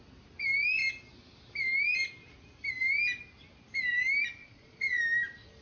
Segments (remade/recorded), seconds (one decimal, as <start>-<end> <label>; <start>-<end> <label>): 0.0-4.4 recorded; 4.4-5.0 remade; 5.0-5.6 recorded